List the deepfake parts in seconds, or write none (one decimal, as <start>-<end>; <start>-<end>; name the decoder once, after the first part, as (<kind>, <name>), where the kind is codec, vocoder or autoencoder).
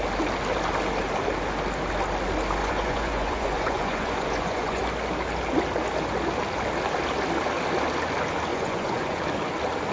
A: 2.6-4.8 (vocoder, Vocos); 8.5-9.2